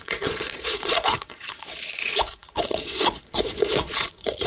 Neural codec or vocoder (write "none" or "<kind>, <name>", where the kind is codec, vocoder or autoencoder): vocoder, Vocos